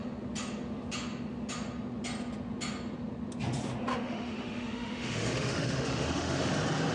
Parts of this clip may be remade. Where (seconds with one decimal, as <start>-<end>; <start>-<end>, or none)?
3.9-6.5